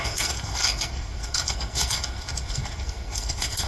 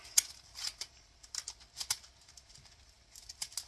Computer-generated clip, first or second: first